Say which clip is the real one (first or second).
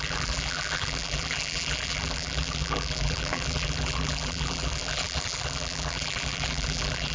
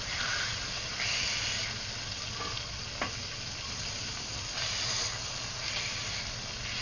second